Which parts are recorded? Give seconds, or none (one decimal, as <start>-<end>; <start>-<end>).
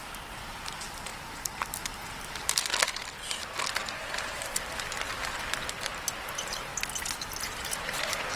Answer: 1.1-5.7; 6.7-7.4